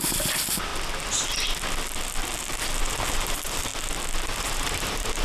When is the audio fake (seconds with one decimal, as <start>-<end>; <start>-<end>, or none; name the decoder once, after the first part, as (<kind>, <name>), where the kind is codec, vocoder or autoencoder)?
0.0-0.7 (vocoder, BigVGAN v2); 2.8-3.7; 4.4-5.2